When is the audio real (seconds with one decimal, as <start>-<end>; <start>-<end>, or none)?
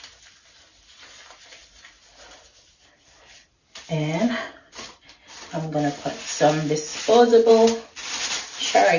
0.0-9.0